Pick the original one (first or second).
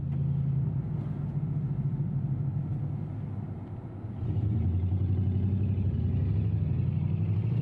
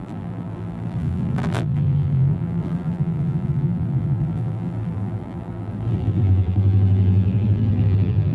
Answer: first